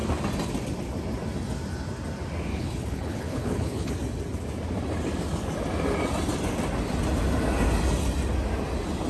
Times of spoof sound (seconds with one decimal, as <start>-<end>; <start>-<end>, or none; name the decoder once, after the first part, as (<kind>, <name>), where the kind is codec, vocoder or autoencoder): 2.5-3.9 (codec, HILCodec)